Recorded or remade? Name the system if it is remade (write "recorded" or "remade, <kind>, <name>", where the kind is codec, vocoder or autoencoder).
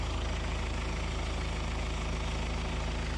recorded